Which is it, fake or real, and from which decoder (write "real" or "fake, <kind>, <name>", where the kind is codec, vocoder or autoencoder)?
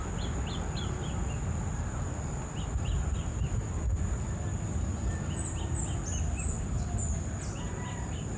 real